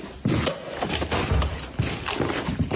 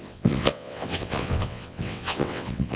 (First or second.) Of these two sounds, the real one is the first